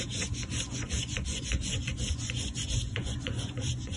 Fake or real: fake